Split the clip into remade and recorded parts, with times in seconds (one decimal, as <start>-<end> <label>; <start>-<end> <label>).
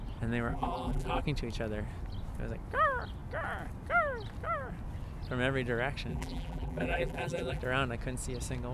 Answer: 0.0-0.5 recorded; 0.5-1.2 remade; 1.2-6.1 recorded; 6.1-7.6 remade; 7.6-8.7 recorded